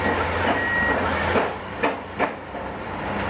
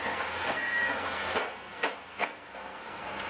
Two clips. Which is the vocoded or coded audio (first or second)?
second